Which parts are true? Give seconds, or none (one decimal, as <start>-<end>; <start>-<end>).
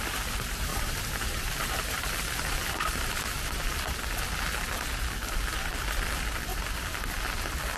0.0-0.7; 2.1-7.8